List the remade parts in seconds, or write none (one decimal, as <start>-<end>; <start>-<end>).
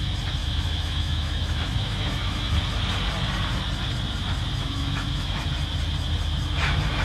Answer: 0.4-2.5; 4.6-5.4